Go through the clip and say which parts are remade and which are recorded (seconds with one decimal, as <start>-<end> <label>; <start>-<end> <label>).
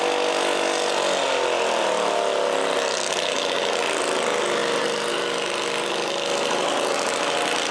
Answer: 0.0-7.7 recorded